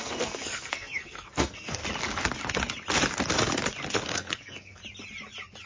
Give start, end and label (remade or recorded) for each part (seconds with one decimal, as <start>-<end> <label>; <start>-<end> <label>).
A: 0.0-1.8 remade; 1.8-3.9 recorded; 3.9-4.8 remade; 4.8-5.7 recorded